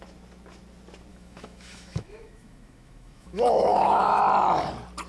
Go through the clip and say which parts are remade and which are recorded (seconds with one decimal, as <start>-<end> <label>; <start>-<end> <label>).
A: 0.0-1.1 recorded; 1.1-4.2 remade; 4.2-5.1 recorded